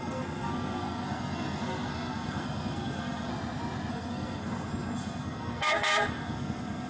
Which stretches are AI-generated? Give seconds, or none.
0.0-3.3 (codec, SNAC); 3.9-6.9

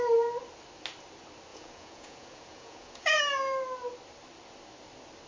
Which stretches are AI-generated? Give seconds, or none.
1.5-3.2 (vocoder, Vocos)